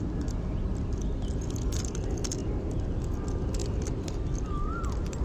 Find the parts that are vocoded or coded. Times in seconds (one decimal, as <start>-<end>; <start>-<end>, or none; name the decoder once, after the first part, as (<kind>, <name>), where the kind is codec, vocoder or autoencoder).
none